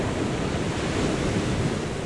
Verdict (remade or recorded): recorded